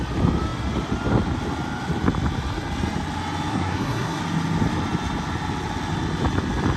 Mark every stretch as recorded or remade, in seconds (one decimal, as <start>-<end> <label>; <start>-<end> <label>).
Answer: 0.0-3.5 recorded; 3.5-4.2 remade; 4.2-6.8 recorded